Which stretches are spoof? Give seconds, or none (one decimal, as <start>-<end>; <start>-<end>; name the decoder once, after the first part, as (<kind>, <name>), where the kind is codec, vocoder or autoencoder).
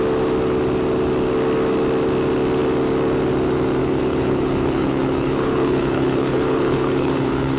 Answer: 3.8-7.6 (codec, HILCodec)